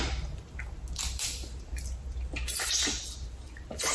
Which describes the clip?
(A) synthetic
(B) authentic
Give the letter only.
B